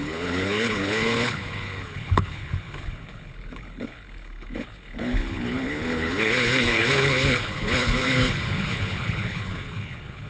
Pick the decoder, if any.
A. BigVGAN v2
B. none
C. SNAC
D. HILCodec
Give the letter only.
D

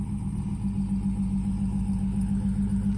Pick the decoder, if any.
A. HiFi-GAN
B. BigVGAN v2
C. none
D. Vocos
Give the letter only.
C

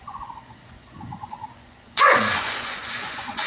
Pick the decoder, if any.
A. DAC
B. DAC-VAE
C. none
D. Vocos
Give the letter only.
D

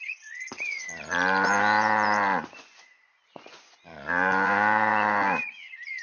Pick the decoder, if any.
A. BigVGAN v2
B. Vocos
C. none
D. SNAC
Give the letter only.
B